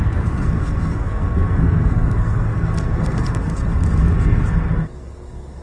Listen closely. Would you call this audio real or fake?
fake